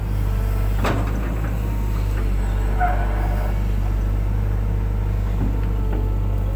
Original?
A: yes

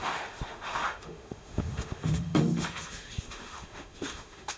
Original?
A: no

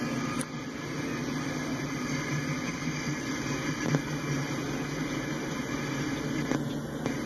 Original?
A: yes